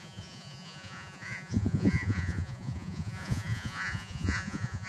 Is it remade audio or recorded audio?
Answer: remade